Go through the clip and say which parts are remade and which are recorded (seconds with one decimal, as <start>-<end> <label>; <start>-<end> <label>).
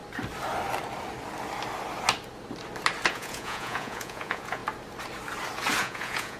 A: 0.0-3.1 recorded; 3.1-4.6 remade; 4.6-5.8 recorded; 5.8-6.4 remade